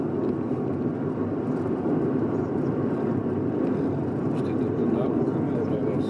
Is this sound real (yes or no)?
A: yes